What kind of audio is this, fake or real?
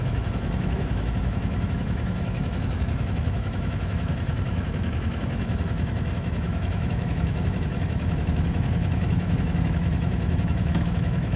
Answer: fake